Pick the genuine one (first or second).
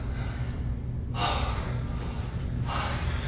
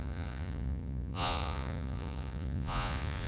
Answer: first